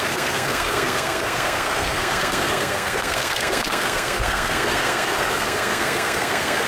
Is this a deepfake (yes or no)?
yes